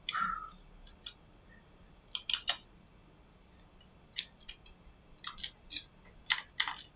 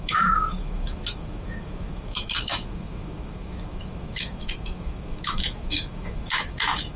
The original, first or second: first